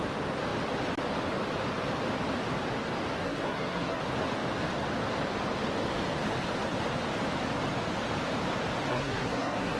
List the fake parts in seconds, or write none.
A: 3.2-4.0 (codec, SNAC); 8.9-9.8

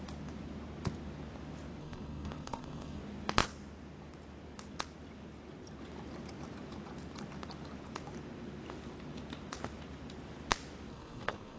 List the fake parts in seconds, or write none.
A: 1.8-3.0 (codec, SNAC); 10.9-11.6

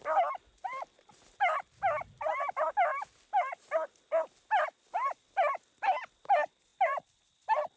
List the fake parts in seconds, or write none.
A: none

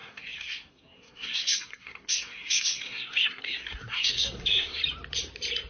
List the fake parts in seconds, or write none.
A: 0.0-4.8 (codec, SNAC)

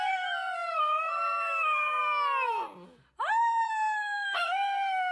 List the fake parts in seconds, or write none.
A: 0.0-2.0 (codec, SNAC); 3.3-5.1

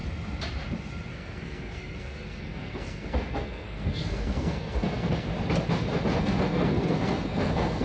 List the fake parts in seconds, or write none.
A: 1.1-5.3 (codec, SNAC); 6.2-7.8

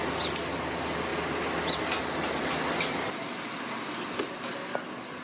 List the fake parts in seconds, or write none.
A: none

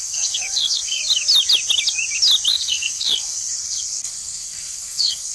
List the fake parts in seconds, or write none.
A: 0.0-1.0 (codec, SNAC); 2.5-5.3